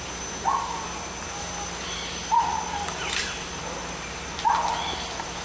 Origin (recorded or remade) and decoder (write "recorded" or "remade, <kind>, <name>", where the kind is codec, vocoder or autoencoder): recorded